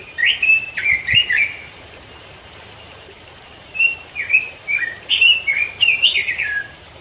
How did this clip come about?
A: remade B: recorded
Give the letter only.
A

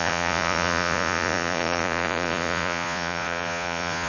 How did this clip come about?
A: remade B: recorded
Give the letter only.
A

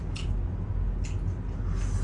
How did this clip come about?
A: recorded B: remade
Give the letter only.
A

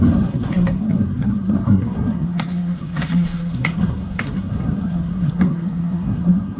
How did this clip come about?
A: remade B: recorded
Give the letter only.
A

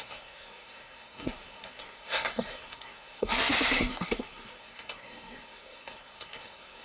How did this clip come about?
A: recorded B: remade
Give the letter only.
B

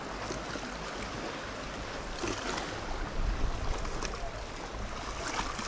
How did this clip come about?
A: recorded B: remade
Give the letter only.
A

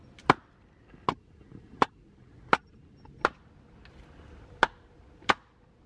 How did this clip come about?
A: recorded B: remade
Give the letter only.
A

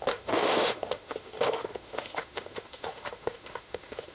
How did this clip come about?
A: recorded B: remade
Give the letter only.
B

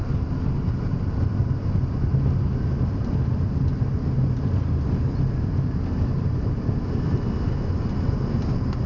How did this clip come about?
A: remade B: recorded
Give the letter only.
B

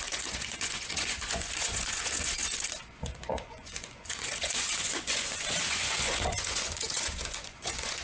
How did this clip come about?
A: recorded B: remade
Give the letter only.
B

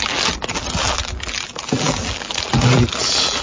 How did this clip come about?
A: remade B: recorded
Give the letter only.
A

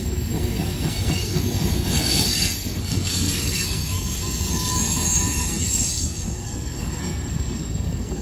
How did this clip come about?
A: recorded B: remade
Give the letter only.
B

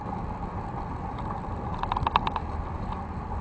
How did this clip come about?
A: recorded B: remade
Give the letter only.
A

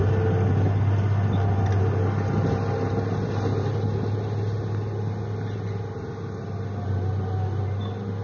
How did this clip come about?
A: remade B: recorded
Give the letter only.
B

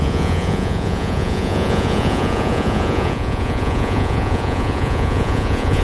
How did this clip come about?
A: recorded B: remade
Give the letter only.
B